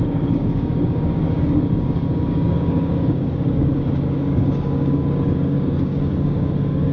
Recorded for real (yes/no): no